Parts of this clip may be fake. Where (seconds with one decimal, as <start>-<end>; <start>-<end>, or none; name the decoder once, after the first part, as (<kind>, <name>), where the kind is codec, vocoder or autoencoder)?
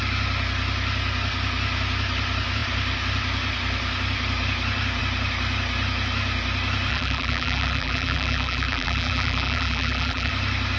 6.9-10.3 (vocoder, BigVGAN v2)